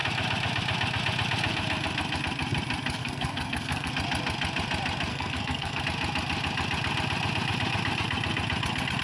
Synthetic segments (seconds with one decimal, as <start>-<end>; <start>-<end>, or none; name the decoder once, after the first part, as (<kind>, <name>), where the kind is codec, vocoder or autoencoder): 3.0-3.9 (codec, SNAC); 5.1-5.8